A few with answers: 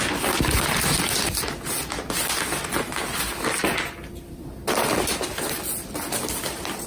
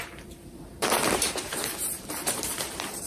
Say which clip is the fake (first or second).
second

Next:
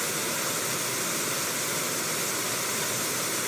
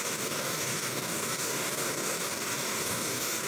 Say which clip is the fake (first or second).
second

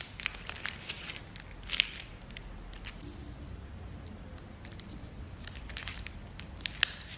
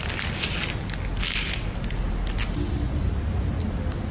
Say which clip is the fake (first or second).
first